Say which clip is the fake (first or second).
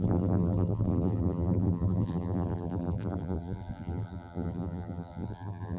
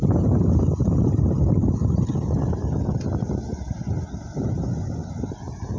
first